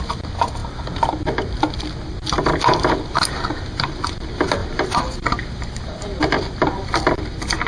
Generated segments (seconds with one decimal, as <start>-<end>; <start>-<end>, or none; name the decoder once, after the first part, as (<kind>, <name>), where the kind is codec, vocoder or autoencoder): 4.6-6.2 (vocoder, BigVGAN v2)